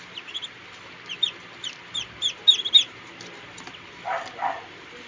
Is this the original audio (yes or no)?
yes